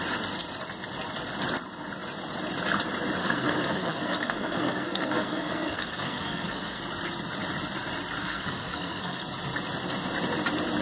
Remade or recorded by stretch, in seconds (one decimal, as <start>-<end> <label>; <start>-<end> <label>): 0.0-3.2 recorded; 3.2-6.8 remade; 6.8-8.2 recorded; 8.2-9.2 remade; 9.2-10.8 recorded